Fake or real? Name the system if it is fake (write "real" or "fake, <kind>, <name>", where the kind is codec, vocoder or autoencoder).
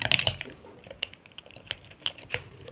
fake, vocoder, BigVGAN v2